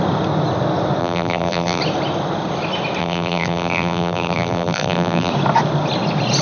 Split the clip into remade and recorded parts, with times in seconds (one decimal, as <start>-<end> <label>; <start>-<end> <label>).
0.0-1.0 recorded; 1.0-1.8 remade; 1.8-3.0 recorded; 3.0-5.3 remade; 5.3-6.4 recorded